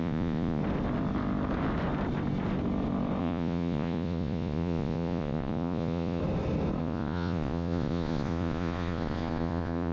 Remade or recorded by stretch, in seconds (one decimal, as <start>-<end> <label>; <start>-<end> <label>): 0.0-0.6 remade; 0.6-3.2 recorded; 3.2-6.2 remade; 6.2-6.8 recorded; 6.8-9.9 remade